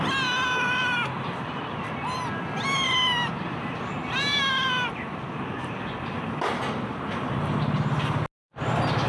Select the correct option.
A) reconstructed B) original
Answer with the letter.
B